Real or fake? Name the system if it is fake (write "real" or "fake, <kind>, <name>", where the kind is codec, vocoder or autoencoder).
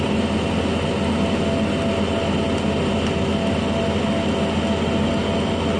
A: real